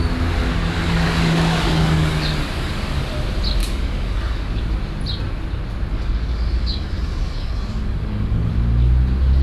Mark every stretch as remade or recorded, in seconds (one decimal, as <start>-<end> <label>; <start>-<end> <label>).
0.0-0.5 recorded; 0.5-3.0 remade; 3.0-3.6 recorded; 3.6-4.6 remade; 4.6-5.9 recorded; 5.9-8.5 remade; 8.5-9.4 recorded